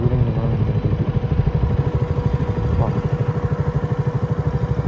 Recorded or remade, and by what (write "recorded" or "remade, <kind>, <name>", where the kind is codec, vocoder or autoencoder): recorded